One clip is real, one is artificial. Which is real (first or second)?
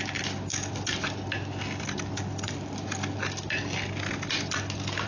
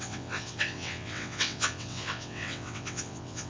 first